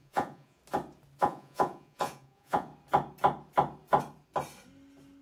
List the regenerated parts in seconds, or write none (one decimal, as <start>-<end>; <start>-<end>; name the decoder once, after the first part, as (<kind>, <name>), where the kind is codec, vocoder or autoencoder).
0.0-0.6 (vocoder, Vocos); 1.2-2.7